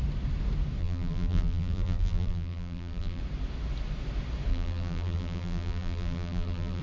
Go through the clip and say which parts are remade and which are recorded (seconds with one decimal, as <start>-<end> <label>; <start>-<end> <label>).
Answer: 0.0-0.8 recorded; 0.8-3.2 remade; 3.2-4.5 recorded; 4.5-6.8 remade